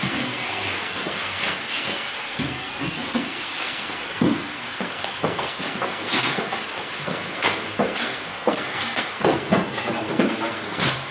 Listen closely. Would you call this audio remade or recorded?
remade